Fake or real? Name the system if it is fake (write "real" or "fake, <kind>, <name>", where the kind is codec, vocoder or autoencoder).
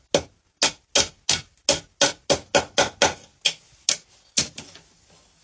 real